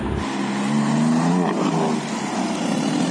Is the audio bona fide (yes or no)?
yes